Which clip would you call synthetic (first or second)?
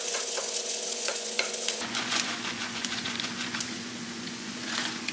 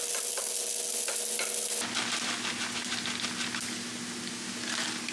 first